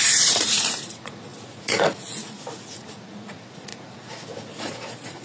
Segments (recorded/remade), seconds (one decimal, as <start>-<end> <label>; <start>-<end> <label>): 0.0-5.2 remade